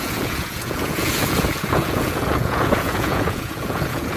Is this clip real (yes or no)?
no